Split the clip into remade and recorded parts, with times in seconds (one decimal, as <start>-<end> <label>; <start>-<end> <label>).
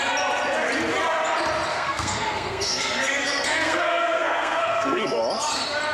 0.0-1.7 recorded; 1.7-5.2 remade; 5.2-5.9 recorded